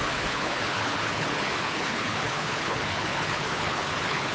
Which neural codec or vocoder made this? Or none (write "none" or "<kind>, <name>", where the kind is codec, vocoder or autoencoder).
codec, HILCodec